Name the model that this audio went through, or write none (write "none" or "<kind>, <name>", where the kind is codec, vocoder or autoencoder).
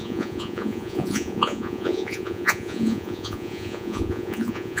vocoder, Vocos